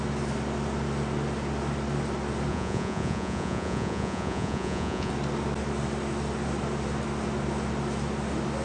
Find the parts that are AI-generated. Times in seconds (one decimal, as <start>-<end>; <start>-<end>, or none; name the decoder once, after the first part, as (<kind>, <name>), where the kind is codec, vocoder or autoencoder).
2.5-5.1 (vocoder, Vocos)